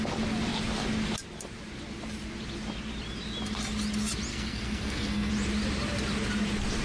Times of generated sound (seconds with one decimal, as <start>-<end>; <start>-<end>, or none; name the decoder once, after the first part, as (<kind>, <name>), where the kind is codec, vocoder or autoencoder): 4.3-5.3 (codec, SNAC)